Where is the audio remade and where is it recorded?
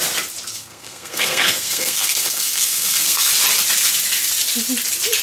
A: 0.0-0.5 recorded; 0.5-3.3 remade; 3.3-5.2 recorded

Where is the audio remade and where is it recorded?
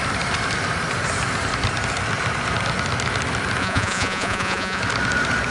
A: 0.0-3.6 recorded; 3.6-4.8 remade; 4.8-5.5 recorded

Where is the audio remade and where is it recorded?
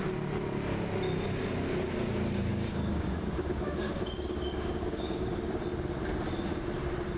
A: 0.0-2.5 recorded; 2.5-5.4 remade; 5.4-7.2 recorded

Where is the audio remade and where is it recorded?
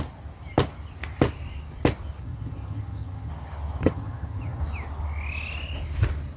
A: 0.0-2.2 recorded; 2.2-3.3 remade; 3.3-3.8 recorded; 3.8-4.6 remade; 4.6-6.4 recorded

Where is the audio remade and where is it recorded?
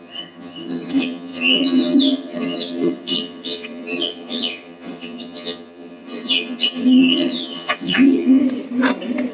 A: 0.0-8.4 remade; 8.4-9.3 recorded